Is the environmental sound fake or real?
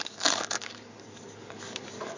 fake